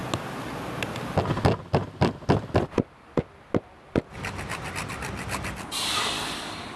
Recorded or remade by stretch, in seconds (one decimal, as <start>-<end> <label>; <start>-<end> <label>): 0.0-6.8 recorded